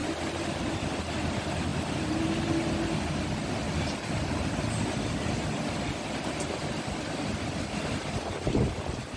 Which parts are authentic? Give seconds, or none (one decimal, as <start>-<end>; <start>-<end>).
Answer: 0.0-9.2